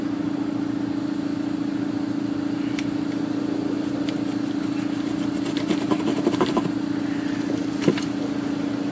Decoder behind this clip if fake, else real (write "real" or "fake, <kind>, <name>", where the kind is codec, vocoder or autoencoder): fake, vocoder, BigVGAN v2